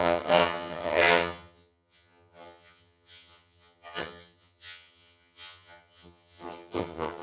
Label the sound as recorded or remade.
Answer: remade